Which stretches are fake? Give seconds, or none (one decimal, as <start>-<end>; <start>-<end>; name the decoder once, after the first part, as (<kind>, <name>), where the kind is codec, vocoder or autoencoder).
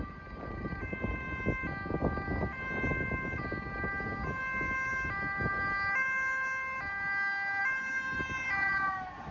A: none